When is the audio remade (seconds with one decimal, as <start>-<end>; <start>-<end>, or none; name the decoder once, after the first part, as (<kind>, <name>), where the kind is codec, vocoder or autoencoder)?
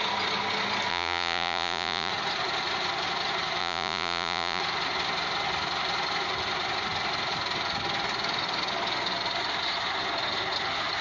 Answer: 0.9-2.1 (vocoder, Vocos); 3.6-4.6